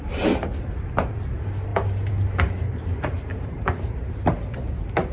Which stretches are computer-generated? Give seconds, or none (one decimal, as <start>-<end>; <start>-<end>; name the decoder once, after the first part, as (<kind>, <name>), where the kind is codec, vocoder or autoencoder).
1.7-3.9 (vocoder, BigVGAN v2)